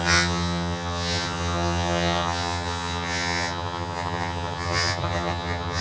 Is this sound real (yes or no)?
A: no